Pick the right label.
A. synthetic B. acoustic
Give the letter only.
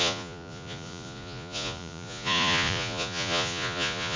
A